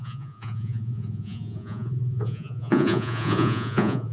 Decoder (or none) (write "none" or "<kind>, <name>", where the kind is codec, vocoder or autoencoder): vocoder, Vocos